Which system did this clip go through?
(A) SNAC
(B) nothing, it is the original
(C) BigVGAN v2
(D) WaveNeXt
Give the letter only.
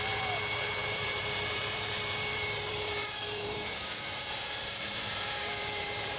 C